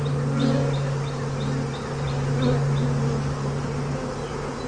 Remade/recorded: recorded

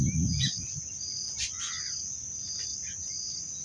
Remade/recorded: recorded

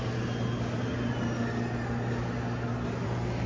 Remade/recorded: recorded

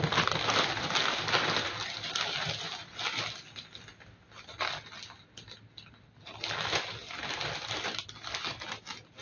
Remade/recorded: recorded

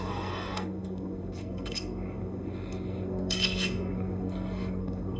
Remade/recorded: remade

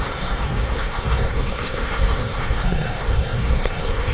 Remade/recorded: remade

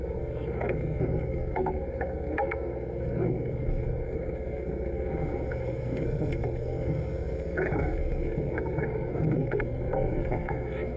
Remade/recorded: remade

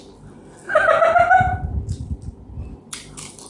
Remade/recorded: recorded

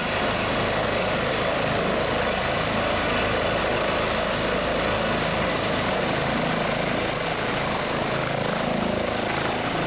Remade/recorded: recorded